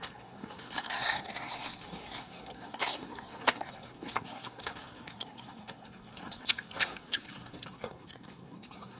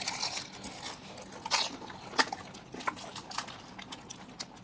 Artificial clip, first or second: first